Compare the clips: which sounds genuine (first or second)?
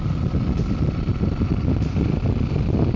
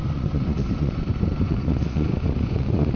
first